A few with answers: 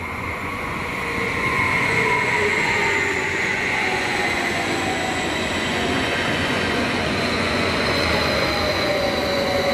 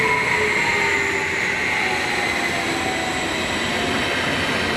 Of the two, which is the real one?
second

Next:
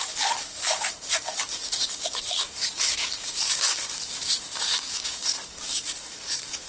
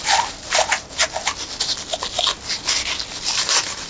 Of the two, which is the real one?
second